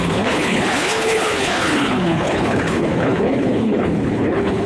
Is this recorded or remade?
remade